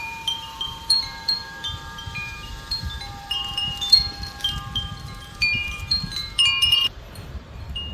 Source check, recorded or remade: remade